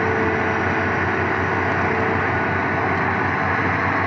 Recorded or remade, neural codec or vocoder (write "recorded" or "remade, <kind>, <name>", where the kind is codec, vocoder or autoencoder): recorded